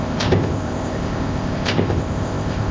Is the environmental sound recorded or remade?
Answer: remade